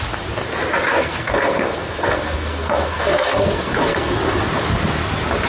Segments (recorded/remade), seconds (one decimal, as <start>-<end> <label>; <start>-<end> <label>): 0.0-0.9 recorded; 0.9-4.2 remade; 4.2-5.5 recorded